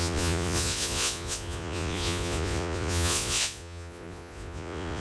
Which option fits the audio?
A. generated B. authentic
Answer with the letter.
A